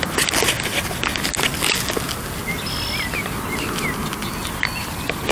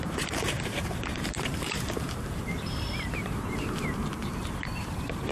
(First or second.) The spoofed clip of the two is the second